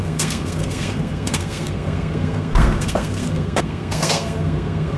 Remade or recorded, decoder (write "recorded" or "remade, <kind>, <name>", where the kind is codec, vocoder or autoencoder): remade, codec, SNAC